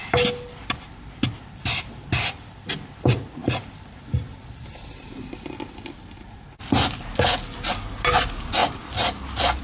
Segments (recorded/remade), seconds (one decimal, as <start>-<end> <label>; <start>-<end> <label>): 0.0-9.6 recorded